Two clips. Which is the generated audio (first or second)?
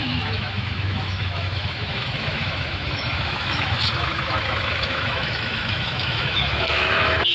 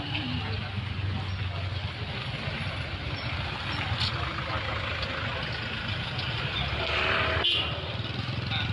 first